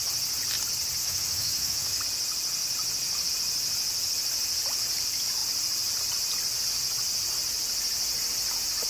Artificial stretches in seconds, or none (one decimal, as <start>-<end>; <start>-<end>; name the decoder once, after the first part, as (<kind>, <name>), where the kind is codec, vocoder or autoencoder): 1.0-2.0 (autoencoder, DAC-VAE)